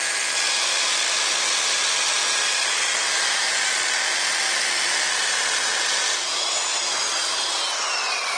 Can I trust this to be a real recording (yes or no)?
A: yes